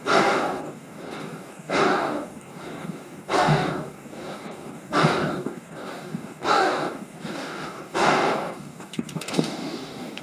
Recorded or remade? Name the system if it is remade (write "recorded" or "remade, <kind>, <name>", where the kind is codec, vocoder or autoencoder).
remade, codec, DAC